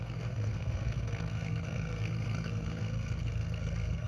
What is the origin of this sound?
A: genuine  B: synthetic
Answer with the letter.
B